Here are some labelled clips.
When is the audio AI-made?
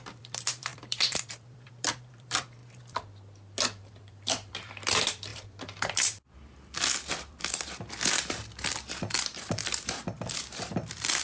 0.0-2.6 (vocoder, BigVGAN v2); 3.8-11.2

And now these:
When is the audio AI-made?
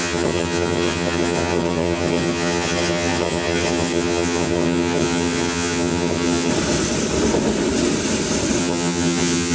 0.0-6.5 (vocoder, HiFi-GAN); 8.6-9.5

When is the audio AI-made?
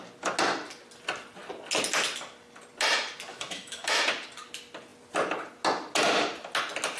3.3-4.0 (autoencoder, DAC-VAE)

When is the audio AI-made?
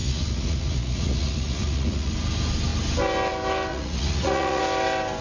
0.0-2.1 (vocoder, Vocos); 3.7-4.6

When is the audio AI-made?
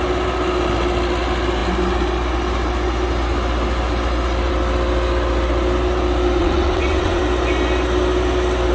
6.4-7.2 (vocoder, WaveNeXt)